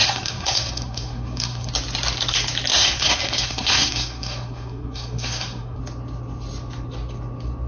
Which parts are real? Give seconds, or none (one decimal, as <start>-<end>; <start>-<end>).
1.7-2.7; 5.8-7.7

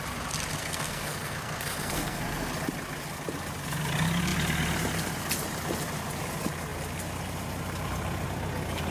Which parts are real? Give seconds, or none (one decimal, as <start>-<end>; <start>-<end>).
0.0-0.5; 2.5-8.9

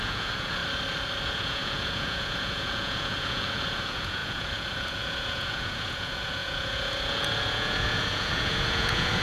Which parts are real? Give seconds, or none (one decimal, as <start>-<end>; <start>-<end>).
0.6-1.2

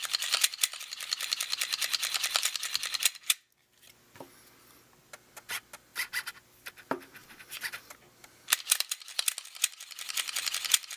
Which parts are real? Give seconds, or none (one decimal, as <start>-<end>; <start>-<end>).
0.0-5.9; 6.7-7.2; 7.7-11.0